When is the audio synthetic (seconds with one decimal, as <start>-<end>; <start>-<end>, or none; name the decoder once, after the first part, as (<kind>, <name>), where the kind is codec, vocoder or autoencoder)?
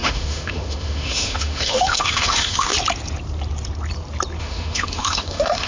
0.0-2.7 (autoencoder, DAC-VAE); 4.4-5.7